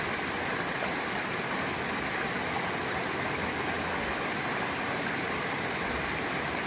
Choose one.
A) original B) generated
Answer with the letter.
A